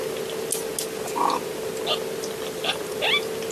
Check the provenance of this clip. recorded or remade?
recorded